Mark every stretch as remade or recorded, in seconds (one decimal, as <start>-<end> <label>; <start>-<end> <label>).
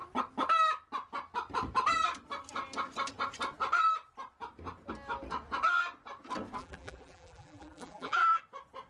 0.0-6.6 recorded; 6.6-8.4 remade; 8.4-8.9 recorded